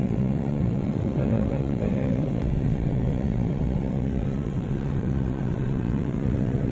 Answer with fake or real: fake